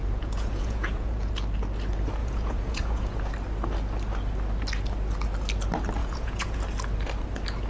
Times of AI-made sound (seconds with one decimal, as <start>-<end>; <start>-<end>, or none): 0.0-1.3; 2.2-3.3; 6.0-6.6